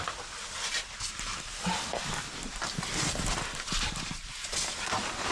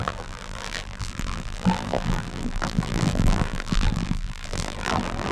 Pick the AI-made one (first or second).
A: second